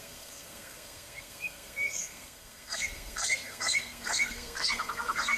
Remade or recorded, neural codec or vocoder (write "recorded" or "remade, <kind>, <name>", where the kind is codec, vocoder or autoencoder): remade, codec, SNAC